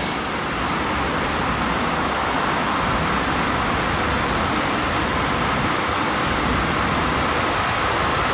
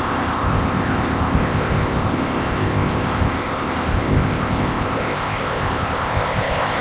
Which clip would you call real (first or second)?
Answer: first